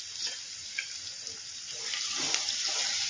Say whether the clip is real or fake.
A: real